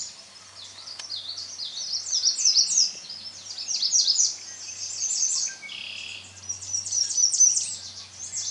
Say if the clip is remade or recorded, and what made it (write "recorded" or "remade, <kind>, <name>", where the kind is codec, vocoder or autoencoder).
recorded